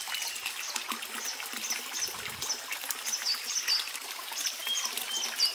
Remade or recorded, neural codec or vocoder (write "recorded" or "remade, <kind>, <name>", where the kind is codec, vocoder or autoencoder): recorded